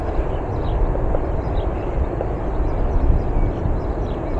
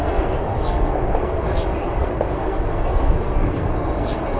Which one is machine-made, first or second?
second